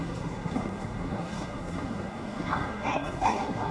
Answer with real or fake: fake